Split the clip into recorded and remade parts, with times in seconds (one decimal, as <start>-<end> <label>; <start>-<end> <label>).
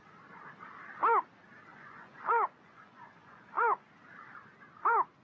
0.0-1.7 recorded; 1.7-3.9 remade; 3.9-5.2 recorded